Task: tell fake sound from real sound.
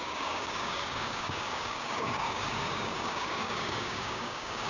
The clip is fake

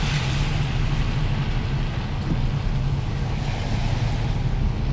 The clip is real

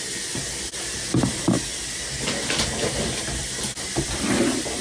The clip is real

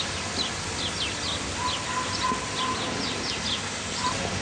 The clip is real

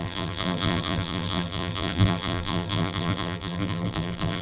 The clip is fake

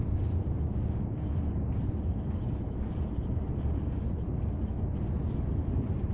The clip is real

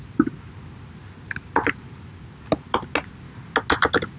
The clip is real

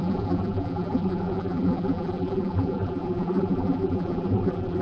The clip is fake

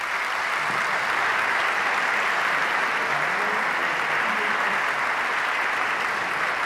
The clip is real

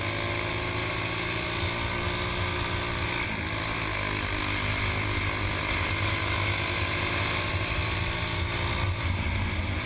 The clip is real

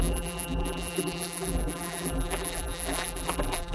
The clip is fake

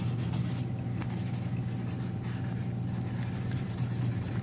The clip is real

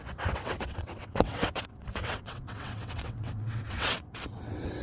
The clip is fake